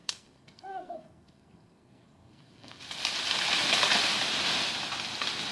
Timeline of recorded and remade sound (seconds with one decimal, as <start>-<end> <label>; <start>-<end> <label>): 0.0-2.8 remade; 2.8-5.5 recorded